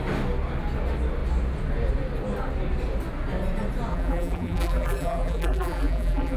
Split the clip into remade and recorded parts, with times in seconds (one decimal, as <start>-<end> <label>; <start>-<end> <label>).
0.0-3.9 recorded; 3.9-6.4 remade